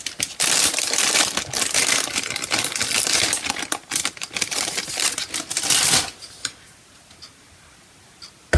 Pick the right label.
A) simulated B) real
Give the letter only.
B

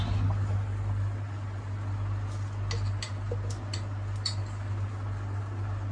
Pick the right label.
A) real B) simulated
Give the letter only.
A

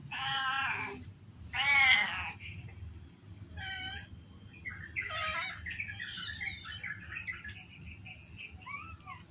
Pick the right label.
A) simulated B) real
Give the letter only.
B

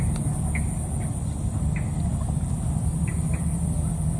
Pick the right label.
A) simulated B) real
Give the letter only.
B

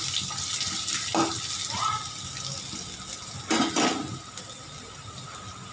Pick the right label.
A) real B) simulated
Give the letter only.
A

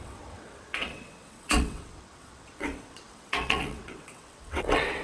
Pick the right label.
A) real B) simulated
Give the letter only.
B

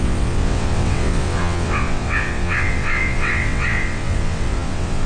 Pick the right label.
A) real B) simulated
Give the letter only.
B